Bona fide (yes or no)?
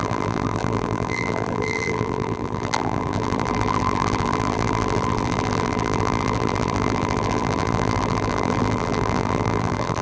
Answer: no